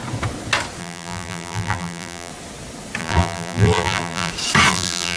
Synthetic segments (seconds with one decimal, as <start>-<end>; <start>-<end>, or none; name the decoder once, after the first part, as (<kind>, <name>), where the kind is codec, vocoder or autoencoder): 0.8-2.3 (vocoder, BigVGAN v2); 3.0-4.3; 4.7-5.2